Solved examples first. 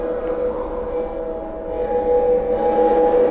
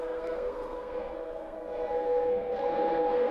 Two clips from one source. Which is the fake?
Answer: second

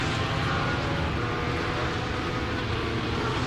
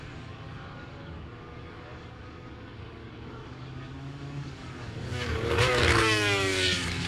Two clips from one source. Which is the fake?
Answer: second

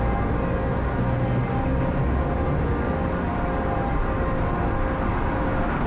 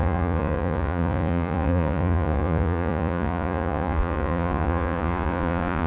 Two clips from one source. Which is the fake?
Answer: second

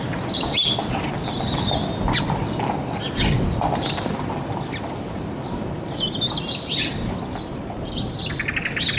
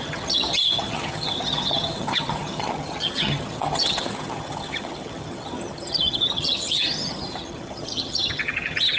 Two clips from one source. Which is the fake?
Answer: second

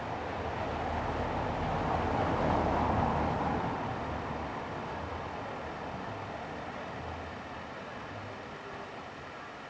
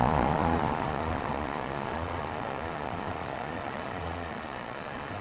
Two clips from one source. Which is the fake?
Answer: second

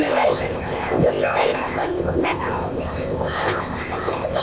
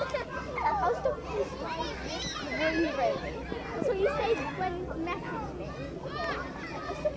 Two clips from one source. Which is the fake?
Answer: first